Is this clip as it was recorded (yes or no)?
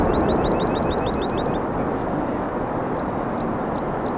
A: yes